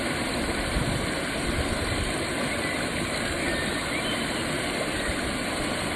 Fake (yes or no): no